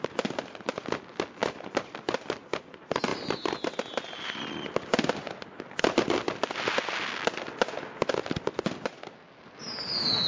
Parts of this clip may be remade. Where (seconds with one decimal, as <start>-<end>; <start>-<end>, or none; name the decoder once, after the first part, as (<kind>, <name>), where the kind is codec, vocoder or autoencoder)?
none